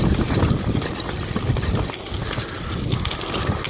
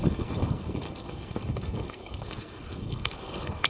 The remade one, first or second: second